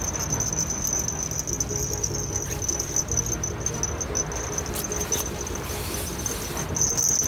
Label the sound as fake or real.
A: real